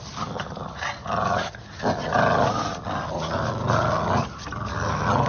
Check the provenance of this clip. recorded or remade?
recorded